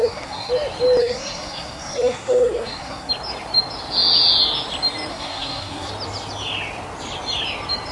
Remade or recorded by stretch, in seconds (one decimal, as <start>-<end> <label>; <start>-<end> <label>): 0.0-0.5 remade; 0.5-1.0 recorded; 1.0-3.1 remade; 3.1-5.1 recorded; 5.1-5.9 remade; 5.9-7.9 recorded